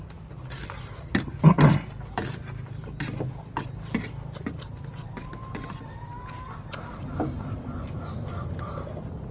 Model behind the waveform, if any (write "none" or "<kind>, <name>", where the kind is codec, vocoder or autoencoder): none